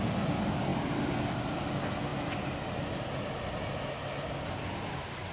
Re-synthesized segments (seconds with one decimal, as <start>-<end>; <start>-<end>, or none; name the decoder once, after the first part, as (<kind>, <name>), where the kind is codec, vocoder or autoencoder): none